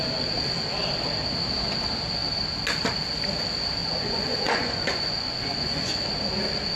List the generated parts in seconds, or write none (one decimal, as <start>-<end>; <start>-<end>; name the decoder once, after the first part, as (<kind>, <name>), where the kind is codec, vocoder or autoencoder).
3.8-6.0 (vocoder, Vocos)